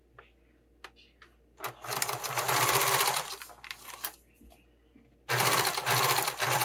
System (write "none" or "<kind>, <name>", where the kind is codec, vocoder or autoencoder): none